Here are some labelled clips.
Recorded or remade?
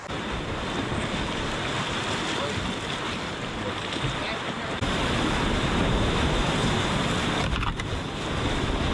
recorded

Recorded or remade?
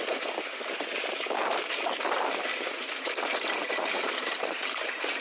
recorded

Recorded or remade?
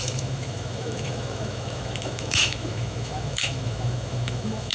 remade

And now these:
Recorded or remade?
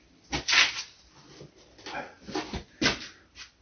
recorded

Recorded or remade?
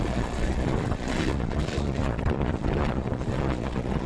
remade